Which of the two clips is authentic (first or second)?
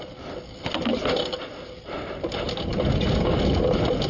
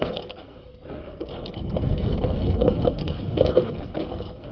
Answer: first